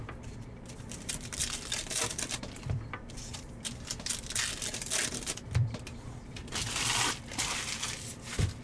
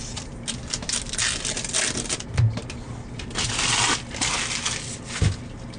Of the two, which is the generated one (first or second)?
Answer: first